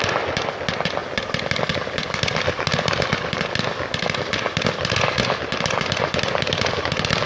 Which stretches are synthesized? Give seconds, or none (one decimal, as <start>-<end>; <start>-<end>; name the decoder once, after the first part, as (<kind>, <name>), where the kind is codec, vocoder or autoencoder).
none